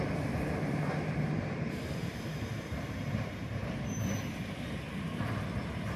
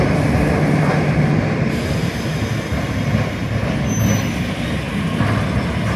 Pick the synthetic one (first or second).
first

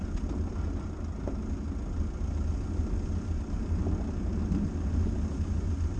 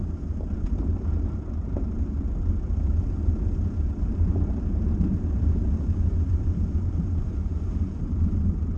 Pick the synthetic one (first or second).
second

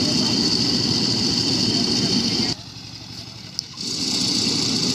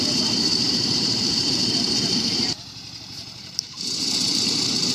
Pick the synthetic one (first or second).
second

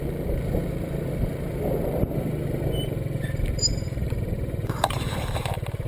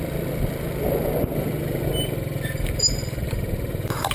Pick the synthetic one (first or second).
first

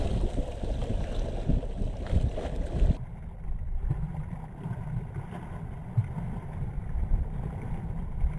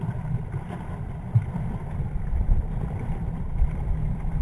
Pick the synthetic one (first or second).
second